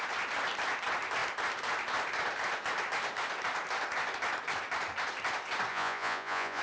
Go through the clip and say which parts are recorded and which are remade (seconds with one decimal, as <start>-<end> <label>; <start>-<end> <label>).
0.0-5.7 recorded; 5.7-6.6 remade